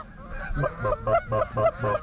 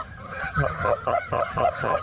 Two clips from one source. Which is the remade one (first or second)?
second